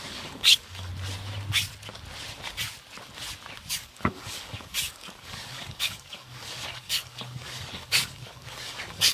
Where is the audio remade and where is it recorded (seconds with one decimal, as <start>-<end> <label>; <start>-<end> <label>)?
0.0-0.9 remade; 0.9-3.7 recorded; 3.7-9.1 remade